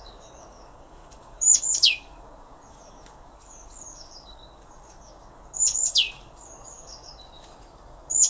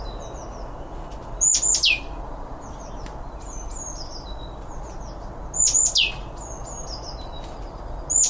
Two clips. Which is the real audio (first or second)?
second